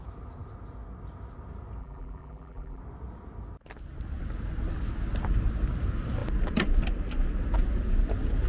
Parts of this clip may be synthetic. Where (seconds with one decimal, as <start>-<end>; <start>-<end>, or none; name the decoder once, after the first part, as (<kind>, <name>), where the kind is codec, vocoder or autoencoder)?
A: 1.8-2.8 (vocoder, BigVGAN v2)